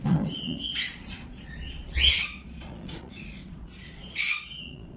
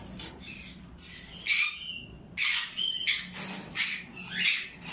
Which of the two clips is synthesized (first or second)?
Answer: first